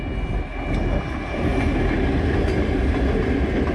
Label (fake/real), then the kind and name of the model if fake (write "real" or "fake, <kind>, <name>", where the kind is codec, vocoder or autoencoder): real